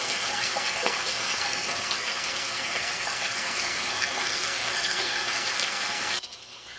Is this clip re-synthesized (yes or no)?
yes